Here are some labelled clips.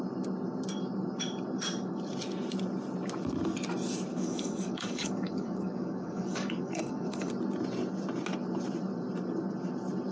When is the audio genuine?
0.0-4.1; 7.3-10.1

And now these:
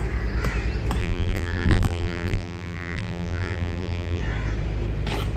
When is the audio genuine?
0.0-1.0; 4.2-5.4

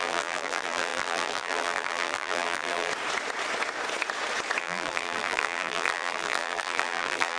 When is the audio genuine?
2.9-4.6

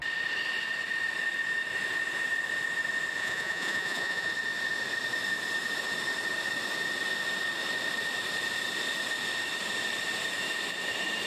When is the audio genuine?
0.0-3.2; 4.3-11.3

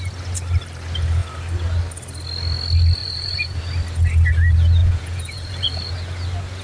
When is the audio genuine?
0.0-3.0; 3.6-4.8; 5.8-6.6